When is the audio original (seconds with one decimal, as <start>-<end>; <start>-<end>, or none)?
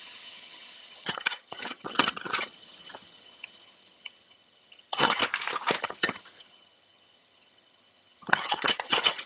5.2-5.8